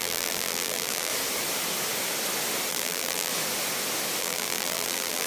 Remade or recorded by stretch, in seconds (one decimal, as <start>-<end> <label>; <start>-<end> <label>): 0.0-1.1 remade; 1.1-2.7 recorded; 2.7-3.3 remade; 3.3-4.2 recorded; 4.2-5.3 remade